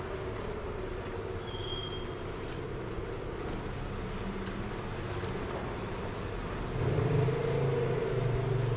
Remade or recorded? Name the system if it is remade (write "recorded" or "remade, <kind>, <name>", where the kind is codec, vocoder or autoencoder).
recorded